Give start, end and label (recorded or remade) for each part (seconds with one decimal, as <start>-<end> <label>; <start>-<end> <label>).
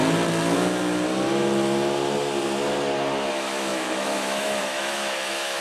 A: 0.0-3.3 recorded; 3.3-5.6 remade